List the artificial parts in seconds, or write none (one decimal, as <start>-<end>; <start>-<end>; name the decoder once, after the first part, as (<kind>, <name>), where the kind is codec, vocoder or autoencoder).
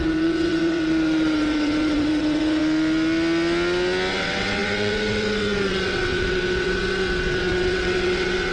0.0-2.6 (vocoder, WaveNeXt); 4.1-8.5